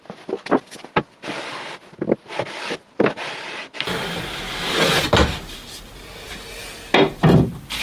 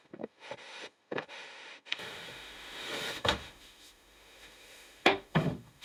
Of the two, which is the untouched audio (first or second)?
first